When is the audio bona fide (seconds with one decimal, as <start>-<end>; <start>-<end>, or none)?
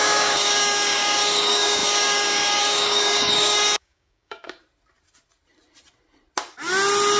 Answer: 4.6-7.2